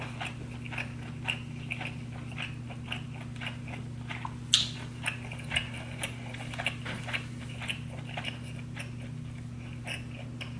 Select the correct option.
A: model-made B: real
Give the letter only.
B